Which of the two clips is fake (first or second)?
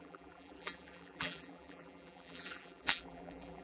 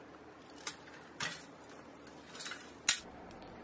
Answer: first